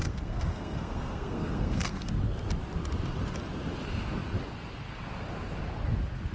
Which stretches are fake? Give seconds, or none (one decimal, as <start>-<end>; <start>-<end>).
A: 0.0-2.1

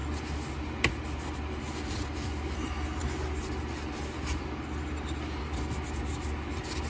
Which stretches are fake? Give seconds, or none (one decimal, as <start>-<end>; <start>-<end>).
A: none

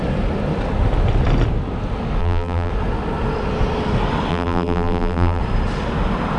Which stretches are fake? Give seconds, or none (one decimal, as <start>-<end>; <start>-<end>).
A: 2.2-2.7; 4.3-5.4

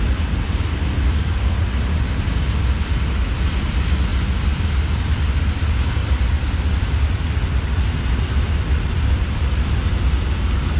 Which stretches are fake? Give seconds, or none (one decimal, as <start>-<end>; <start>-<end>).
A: 4.1-6.2

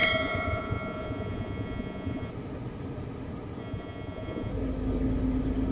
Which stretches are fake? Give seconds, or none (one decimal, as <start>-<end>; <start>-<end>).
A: 0.0-2.3; 3.6-4.5